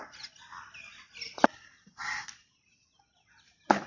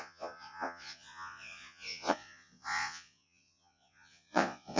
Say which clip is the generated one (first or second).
second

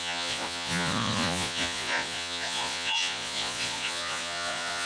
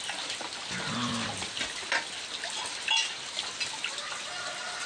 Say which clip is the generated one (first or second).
first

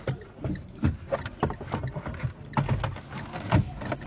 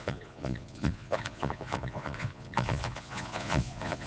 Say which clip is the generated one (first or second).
second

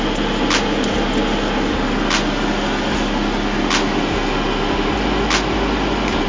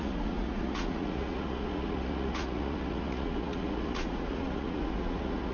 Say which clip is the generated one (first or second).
second